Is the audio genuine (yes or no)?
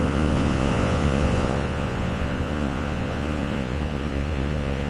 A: no